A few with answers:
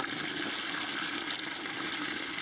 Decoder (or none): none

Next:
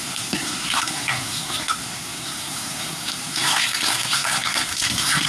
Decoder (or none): codec, SNAC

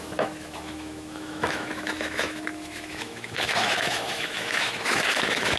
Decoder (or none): autoencoder, DAC-VAE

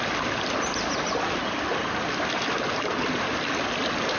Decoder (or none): none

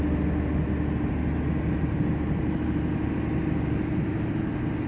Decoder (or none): none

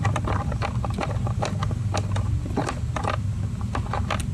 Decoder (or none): none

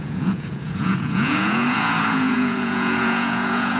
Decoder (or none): vocoder, Vocos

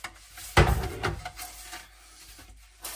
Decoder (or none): none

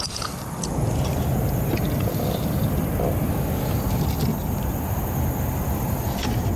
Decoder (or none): none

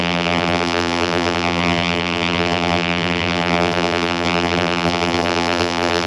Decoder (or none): vocoder, BigVGAN v2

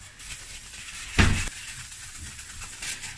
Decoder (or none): none